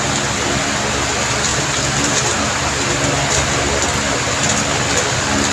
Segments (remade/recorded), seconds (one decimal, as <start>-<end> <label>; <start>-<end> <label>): 0.0-1.5 recorded; 1.5-2.9 remade; 2.9-5.5 recorded